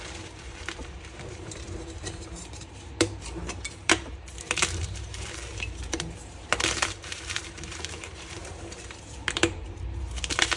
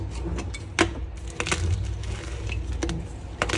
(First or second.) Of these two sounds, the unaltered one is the second